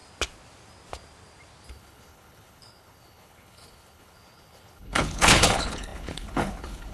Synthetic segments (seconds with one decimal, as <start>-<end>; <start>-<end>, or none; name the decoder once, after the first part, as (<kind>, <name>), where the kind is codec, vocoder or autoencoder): 1.7-6.9 (codec, HILCodec)

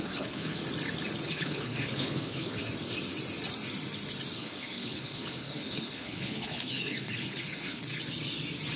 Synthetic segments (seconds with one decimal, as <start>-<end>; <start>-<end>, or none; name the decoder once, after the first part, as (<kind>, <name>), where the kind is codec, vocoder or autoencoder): 0.0-0.6 (codec, HILCodec); 1.3-2.6; 4.3-7.9